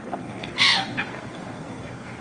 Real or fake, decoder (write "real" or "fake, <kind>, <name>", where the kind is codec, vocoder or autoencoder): fake, codec, SNAC